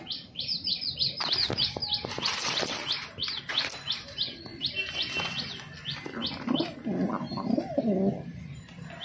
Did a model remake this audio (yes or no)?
no